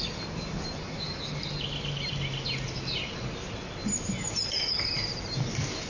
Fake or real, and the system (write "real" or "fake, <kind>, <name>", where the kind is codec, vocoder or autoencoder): real